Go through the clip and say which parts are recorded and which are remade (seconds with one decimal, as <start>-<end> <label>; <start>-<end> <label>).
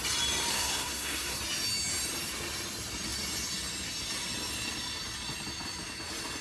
0.0-0.5 recorded; 0.5-1.4 remade; 1.4-6.4 recorded